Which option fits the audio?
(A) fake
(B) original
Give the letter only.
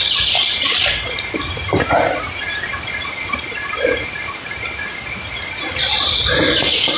B